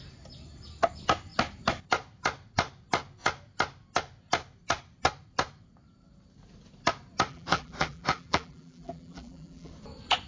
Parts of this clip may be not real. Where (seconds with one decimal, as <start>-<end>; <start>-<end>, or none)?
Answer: 7.3-9.7

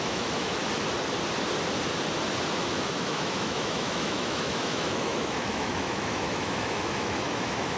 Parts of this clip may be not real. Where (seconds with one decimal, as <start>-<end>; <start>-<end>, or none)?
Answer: 0.0-0.6; 2.6-7.8

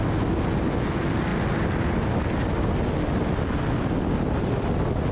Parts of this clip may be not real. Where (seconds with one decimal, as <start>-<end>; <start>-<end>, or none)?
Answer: none

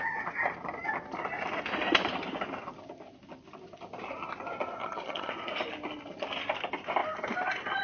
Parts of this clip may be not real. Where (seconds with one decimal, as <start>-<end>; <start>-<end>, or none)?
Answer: 4.8-5.3

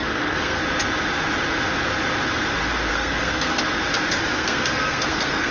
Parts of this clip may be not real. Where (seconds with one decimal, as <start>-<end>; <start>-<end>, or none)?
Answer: 0.0-0.6; 2.9-3.6; 4.1-5.5